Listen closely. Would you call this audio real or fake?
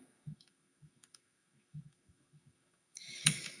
fake